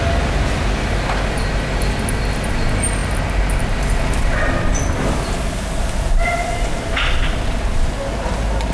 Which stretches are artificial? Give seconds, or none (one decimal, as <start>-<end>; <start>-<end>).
none